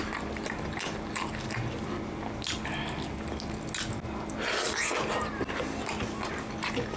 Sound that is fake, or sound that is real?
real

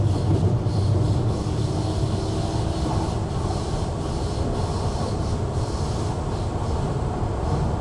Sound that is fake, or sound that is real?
real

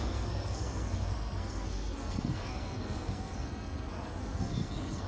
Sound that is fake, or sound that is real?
fake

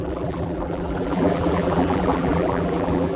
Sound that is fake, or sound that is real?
fake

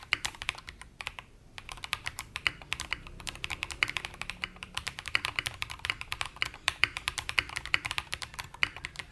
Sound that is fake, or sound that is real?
fake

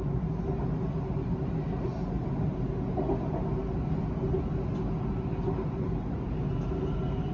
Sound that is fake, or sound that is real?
real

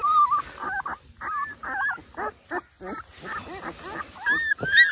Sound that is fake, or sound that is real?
real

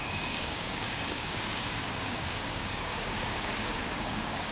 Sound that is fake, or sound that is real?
fake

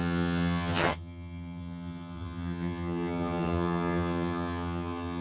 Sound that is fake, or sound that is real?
fake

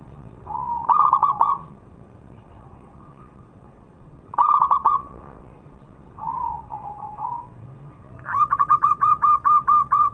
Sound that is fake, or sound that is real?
fake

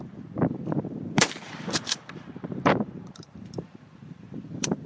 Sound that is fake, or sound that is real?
fake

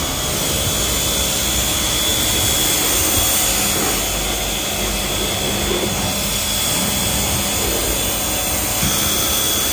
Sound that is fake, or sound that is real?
real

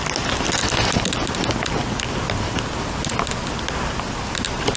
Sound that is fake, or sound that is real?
real